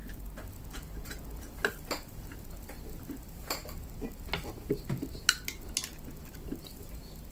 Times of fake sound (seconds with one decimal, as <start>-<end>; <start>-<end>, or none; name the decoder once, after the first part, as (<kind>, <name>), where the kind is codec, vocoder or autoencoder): 0.0-0.6 (vocoder, BigVGAN v2)